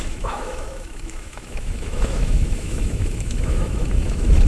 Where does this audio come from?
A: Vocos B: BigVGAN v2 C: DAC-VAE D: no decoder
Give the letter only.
C